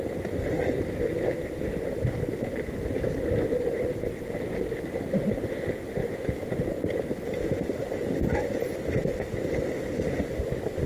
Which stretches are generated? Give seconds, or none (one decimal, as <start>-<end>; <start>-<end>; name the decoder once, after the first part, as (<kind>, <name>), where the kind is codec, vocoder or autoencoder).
6.0-6.6 (autoencoder, DAC-VAE)